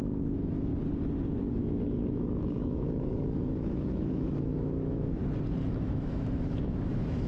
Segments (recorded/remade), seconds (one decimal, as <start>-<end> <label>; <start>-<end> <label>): 0.0-0.7 remade; 0.7-1.5 recorded; 1.5-5.2 remade; 5.2-5.8 recorded; 5.8-7.3 remade